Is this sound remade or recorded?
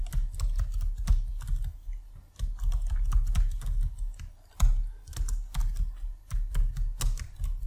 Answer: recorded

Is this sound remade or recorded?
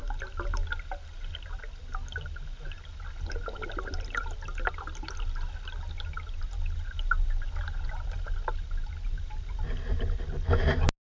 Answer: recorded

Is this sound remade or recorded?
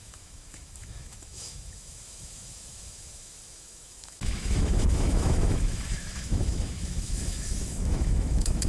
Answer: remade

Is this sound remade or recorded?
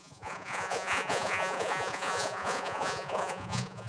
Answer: remade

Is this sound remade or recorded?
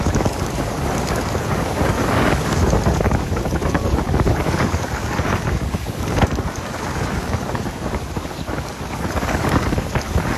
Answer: remade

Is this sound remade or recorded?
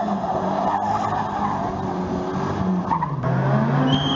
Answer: recorded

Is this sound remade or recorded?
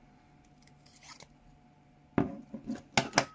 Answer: recorded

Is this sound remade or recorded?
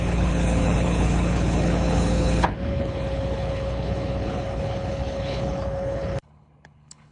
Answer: remade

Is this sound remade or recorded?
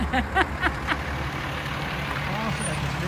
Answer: recorded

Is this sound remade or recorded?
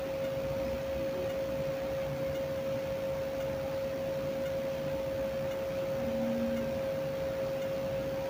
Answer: recorded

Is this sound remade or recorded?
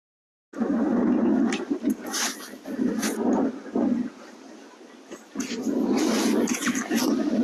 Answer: recorded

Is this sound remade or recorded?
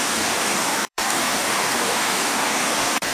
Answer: remade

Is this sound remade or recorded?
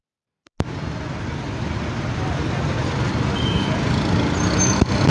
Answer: recorded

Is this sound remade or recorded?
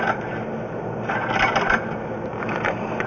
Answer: recorded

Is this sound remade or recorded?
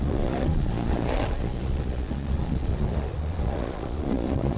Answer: remade